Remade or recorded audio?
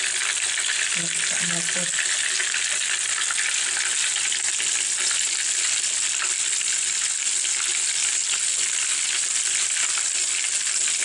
recorded